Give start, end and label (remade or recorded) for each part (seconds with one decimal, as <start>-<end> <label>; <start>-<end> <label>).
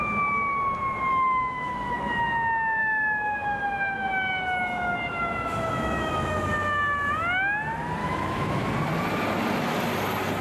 0.0-1.1 recorded; 1.1-2.0 remade; 2.0-2.8 recorded; 2.8-6.5 remade; 6.5-8.0 recorded; 8.0-8.7 remade; 8.7-10.4 recorded